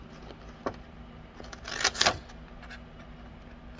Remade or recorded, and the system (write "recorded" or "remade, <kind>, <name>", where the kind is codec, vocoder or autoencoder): recorded